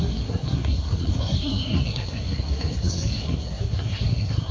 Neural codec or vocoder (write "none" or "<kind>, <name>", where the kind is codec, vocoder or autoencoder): codec, SNAC